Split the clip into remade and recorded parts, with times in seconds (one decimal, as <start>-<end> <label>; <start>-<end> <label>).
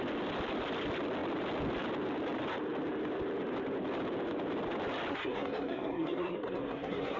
0.0-5.1 recorded; 5.1-7.2 remade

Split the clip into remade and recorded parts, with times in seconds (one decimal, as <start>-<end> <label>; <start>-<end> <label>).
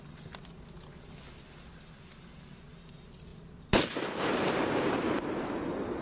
0.0-6.0 recorded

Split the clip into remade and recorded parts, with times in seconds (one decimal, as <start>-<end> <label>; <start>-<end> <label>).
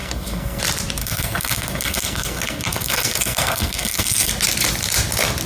0.0-0.6 remade; 0.6-1.0 recorded; 1.0-4.3 remade; 4.3-5.5 recorded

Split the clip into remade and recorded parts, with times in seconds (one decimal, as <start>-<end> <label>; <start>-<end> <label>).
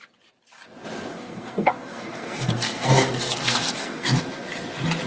0.0-1.1 recorded; 1.1-4.2 remade; 4.2-5.1 recorded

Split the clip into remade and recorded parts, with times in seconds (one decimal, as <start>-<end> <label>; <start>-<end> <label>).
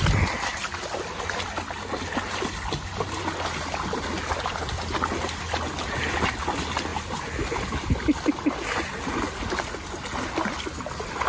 0.0-11.3 recorded